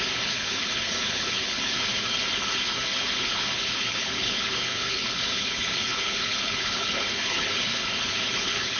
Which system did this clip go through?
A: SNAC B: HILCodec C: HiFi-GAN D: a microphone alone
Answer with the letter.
B